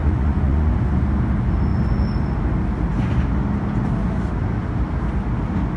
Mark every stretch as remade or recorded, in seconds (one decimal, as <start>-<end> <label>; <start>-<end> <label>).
0.0-0.7 remade; 0.7-5.8 recorded